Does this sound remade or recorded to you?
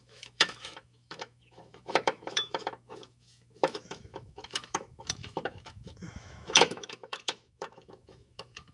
remade